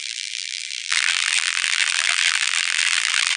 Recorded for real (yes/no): no